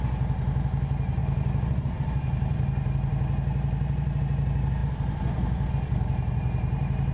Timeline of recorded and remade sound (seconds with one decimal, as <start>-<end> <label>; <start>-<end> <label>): 0.0-1.2 recorded; 1.2-4.2 remade; 4.2-7.1 recorded

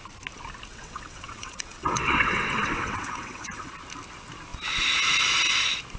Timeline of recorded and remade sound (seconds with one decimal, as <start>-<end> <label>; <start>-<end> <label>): 0.0-0.7 recorded; 0.7-3.7 remade; 3.7-6.0 recorded

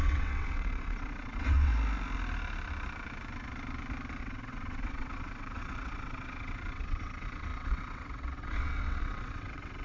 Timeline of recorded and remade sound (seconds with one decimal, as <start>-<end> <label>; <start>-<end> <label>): 0.0-1.7 remade; 1.7-4.2 recorded; 4.2-9.8 remade

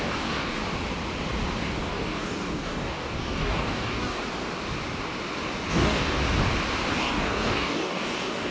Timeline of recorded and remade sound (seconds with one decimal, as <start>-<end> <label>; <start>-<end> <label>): 0.0-0.6 remade; 0.6-1.6 recorded; 1.6-4.2 remade; 4.2-5.7 recorded; 5.7-6.2 remade; 6.2-6.9 recorded; 6.9-8.5 remade

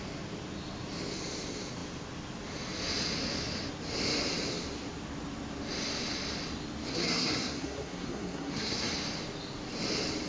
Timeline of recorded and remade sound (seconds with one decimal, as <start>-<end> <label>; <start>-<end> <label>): 0.0-6.9 recorded; 6.9-8.9 remade; 8.9-10.3 recorded

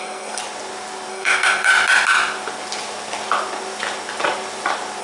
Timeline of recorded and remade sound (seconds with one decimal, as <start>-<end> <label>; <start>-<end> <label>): 0.0-0.4 remade; 0.4-1.1 recorded; 1.1-1.7 remade; 1.7-5.0 recorded

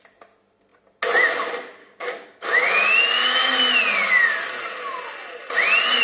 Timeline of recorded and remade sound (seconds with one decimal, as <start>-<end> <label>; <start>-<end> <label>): 0.0-1.8 recorded; 1.8-2.5 remade; 2.5-6.0 recorded